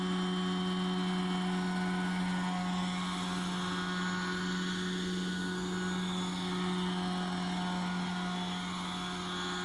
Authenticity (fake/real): real